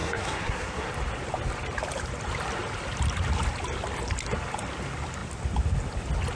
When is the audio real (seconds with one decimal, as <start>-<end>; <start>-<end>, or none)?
0.9-6.4